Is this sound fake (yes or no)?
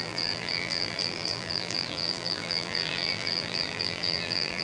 yes